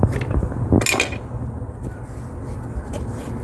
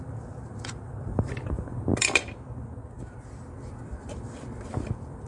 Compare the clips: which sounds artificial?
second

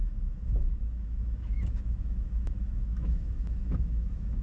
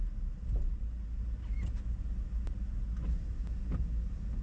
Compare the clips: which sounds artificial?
first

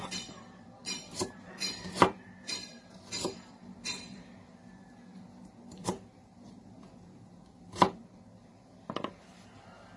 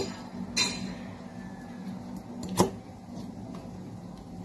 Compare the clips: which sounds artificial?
first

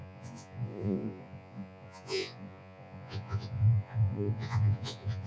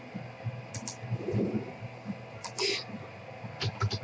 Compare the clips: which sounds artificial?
first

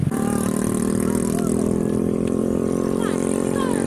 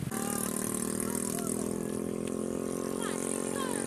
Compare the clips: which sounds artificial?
first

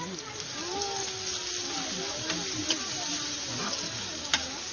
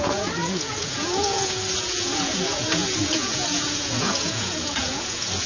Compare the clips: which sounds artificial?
second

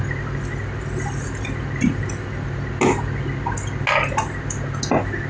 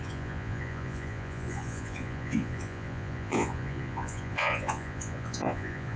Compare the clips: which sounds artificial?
second